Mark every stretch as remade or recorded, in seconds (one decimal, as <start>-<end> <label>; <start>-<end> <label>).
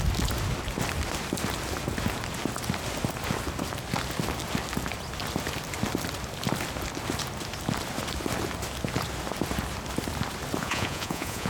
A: 0.0-10.6 recorded; 10.6-11.5 remade